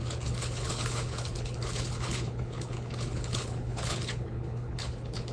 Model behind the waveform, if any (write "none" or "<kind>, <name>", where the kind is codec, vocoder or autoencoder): codec, HILCodec